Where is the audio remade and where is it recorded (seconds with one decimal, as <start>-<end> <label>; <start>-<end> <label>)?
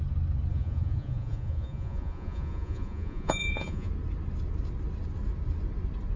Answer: 0.0-0.5 recorded; 0.5-3.9 remade; 3.9-6.2 recorded